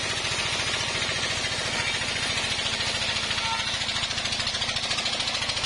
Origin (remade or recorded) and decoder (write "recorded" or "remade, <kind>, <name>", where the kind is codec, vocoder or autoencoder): recorded